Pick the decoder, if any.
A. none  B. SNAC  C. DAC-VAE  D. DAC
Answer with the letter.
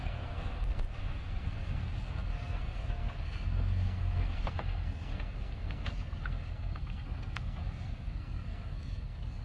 B